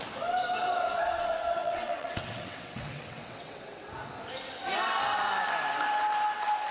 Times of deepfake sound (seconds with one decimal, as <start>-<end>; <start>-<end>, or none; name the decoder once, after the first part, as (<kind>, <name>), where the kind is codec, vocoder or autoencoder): 1.6-3.9 (vocoder, WaveNeXt)